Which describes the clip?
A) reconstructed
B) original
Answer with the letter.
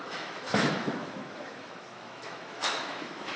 A